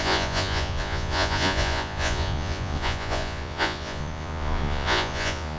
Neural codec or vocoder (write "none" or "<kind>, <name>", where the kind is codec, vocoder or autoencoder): vocoder, Vocos